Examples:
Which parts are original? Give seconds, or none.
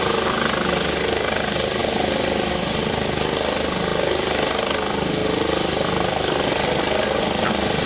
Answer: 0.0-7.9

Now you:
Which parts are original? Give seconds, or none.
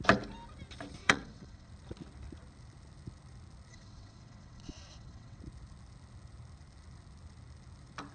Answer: 0.0-1.0; 1.7-3.7; 5.4-8.1